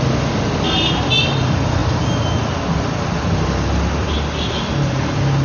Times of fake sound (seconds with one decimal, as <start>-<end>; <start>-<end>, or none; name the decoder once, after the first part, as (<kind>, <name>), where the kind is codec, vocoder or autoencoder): none